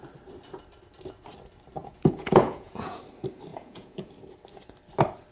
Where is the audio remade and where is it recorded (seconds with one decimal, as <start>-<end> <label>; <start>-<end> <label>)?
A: 0.0-1.8 recorded; 1.8-3.0 remade; 3.0-3.5 recorded; 3.5-4.1 remade; 4.1-5.3 recorded